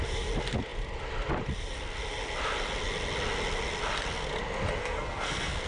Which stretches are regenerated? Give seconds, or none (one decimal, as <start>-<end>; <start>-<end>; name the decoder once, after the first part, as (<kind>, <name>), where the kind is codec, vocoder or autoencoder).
4.8-5.7 (codec, SNAC)